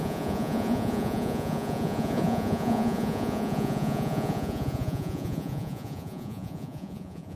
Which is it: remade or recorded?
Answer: remade